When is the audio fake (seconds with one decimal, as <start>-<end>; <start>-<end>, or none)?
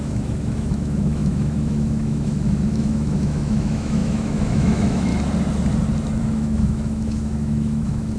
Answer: 0.0-5.1; 6.2-8.2